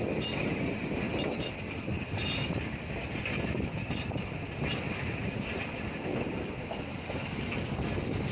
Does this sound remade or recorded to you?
recorded